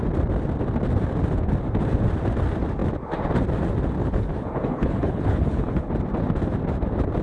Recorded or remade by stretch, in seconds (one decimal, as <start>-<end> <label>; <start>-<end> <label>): 0.0-4.0 recorded; 4.0-5.9 remade; 5.9-7.2 recorded